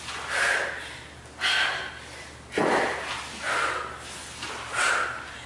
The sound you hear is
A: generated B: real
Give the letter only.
B